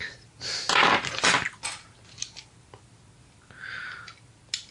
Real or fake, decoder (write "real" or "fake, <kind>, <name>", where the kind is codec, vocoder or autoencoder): real